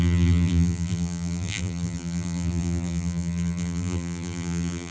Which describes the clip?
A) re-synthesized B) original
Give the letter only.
A